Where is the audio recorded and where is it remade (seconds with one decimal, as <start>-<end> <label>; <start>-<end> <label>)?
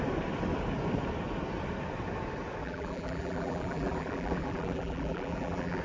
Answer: 0.0-2.6 recorded; 2.6-5.8 remade